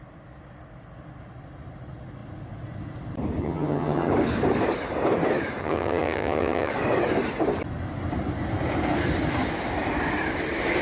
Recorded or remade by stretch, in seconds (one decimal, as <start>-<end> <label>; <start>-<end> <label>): 0.0-3.4 recorded; 3.4-4.1 remade; 4.1-5.6 recorded; 5.6-6.7 remade; 6.7-10.8 recorded